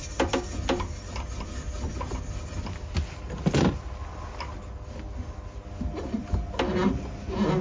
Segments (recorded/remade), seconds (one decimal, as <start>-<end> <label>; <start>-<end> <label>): 0.0-7.6 recorded